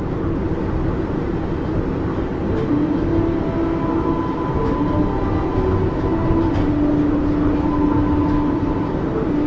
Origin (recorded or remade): recorded